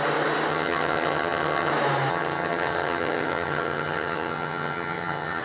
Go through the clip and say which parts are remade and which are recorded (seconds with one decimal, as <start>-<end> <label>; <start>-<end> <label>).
0.0-0.5 recorded; 0.5-1.7 remade; 1.7-2.1 recorded; 2.1-5.4 remade